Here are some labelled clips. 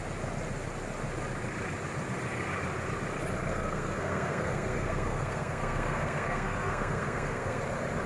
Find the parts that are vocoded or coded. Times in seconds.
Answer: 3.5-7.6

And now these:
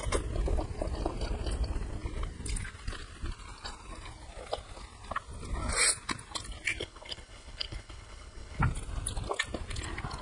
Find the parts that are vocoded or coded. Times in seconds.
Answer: 6.8-8.6

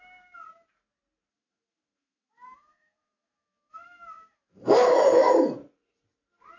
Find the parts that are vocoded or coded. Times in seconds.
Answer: 1.3-5.3

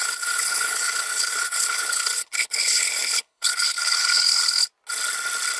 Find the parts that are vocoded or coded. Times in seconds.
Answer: 0.0-4.7

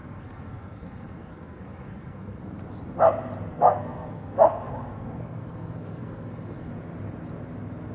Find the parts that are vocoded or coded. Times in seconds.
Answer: 0.0-2.4; 3.5-6.7

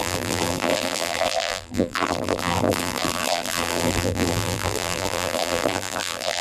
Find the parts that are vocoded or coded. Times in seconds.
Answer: 0.0-6.4